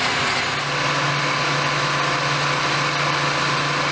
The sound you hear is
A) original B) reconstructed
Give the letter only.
A